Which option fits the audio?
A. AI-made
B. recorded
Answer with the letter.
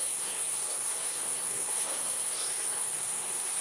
A